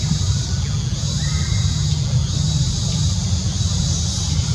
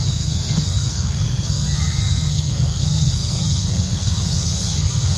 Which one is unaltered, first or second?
first